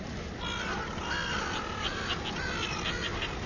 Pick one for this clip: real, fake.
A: real